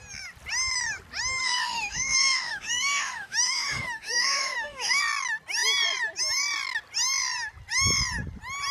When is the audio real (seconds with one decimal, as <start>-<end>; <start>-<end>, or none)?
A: 0.0-1.4; 5.0-8.7